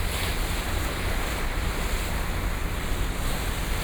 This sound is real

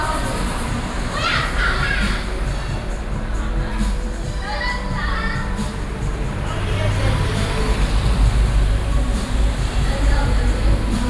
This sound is fake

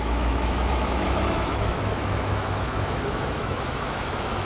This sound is fake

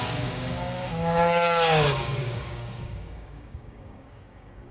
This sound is fake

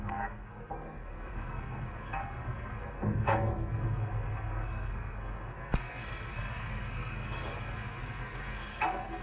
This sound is fake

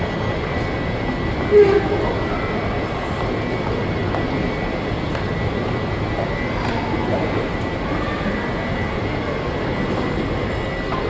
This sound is real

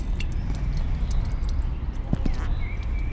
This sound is real